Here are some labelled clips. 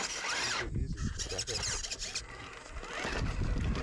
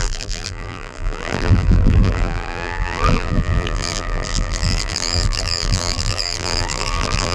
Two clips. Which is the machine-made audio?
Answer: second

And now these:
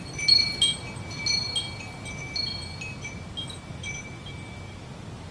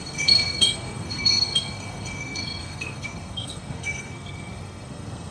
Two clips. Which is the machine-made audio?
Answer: second